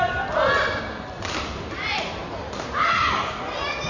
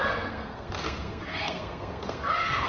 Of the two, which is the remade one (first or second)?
second